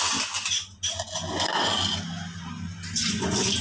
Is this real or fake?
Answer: real